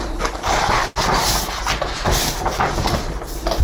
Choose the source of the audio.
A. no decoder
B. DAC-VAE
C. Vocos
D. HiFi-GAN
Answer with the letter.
A